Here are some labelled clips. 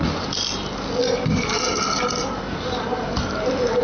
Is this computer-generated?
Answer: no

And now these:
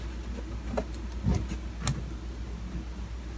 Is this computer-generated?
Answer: no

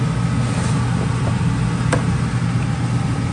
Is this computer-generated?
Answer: no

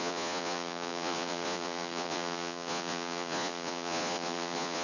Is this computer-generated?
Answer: yes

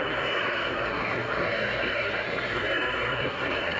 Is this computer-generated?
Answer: yes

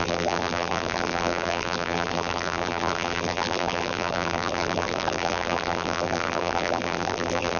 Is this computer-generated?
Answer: yes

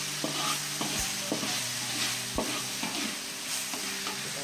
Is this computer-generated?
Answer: no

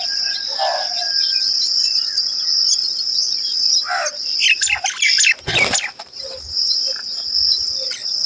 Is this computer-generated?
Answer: no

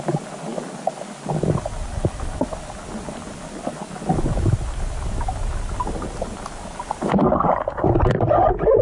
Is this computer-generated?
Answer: no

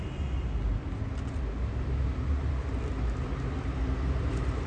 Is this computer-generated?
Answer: no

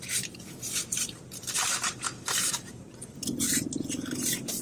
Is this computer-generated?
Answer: yes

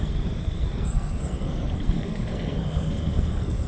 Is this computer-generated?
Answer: yes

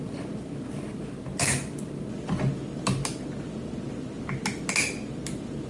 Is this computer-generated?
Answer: no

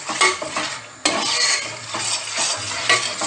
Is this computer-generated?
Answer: no